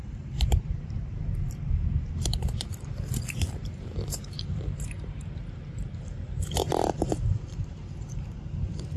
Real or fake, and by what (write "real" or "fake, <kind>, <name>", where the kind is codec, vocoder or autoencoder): fake, vocoder, BigVGAN v2